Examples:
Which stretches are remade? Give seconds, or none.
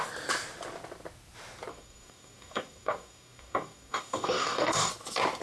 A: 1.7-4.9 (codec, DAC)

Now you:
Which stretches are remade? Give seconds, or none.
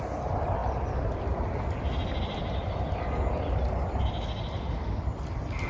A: none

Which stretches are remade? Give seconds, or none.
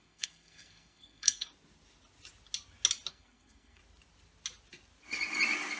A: 0.0-1.5 (codec, SNAC); 3.1-3.8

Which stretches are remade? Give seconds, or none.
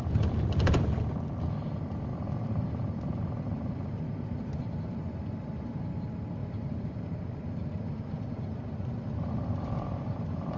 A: 2.1-5.8 (vocoder, BigVGAN v2); 6.4-10.6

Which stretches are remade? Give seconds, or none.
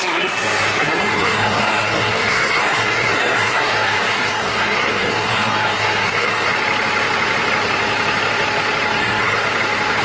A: 0.0-6.5 (codec, SNAC); 9.0-9.4